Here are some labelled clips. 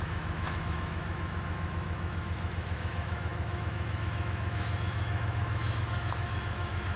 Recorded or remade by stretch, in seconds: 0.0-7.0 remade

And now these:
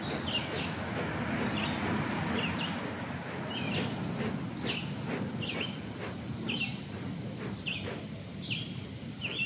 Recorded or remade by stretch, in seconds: 0.0-0.4 recorded; 0.4-1.1 remade; 1.1-9.5 recorded

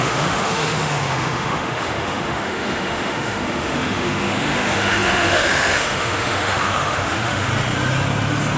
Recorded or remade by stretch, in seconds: 0.0-7.5 remade; 7.5-8.6 recorded

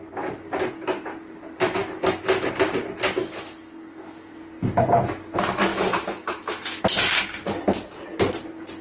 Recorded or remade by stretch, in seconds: 0.0-1.8 recorded; 1.8-2.5 remade; 2.5-3.2 recorded; 3.2-4.4 remade; 4.4-5.7 recorded; 5.7-6.8 remade; 6.8-8.8 recorded

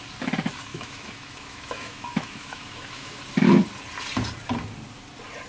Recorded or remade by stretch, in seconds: 0.0-0.7 recorded; 0.7-3.2 remade; 3.2-5.5 recorded